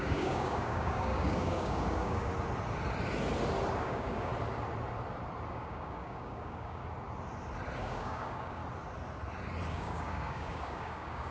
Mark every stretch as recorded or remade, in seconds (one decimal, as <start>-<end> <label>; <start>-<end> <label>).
0.0-2.3 remade; 2.3-3.8 recorded; 3.8-4.3 remade; 4.3-5.5 recorded; 5.5-6.8 remade; 6.8-7.8 recorded; 7.8-8.6 remade; 8.6-9.7 recorded; 9.7-11.3 remade